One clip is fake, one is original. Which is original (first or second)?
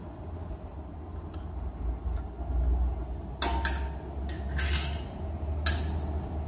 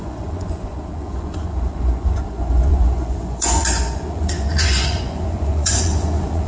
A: first